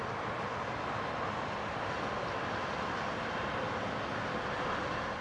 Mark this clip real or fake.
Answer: real